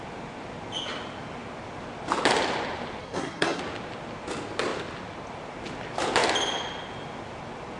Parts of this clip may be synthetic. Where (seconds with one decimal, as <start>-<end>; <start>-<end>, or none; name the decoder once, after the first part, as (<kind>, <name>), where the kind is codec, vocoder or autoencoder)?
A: 3.0-3.6 (codec, SNAC)